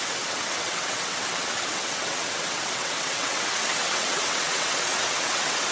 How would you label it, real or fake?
fake